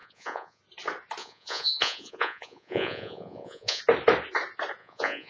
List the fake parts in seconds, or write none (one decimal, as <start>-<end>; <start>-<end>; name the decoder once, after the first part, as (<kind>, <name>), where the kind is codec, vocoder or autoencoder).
0.0-0.6 (vocoder, Vocos); 1.2-3.8; 4.8-5.3